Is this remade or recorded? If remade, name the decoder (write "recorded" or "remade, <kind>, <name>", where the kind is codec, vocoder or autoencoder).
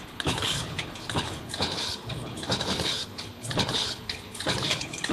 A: remade, codec, HILCodec